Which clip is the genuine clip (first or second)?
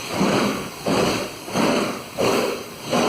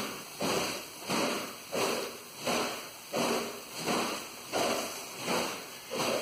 second